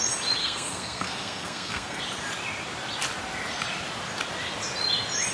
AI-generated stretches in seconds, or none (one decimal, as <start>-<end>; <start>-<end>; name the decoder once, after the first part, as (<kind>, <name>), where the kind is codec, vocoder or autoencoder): 0.4-2.0 (codec, SNAC)